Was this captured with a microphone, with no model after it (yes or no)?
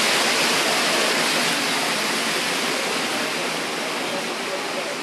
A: yes